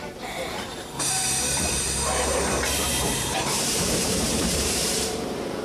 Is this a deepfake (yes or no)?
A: yes